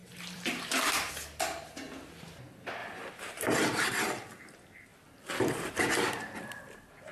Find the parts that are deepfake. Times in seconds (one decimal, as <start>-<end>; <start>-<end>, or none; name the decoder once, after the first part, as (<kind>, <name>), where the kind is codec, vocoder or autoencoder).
0.0-1.1 (vocoder, BigVGAN v2); 2.8-3.5